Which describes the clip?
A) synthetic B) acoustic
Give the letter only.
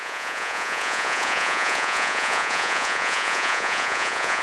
A